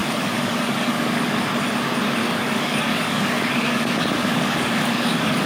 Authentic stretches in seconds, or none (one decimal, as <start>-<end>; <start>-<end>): 1.5-2.2